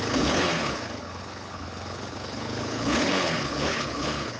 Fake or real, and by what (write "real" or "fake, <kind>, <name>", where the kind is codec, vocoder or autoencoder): fake, codec, HILCodec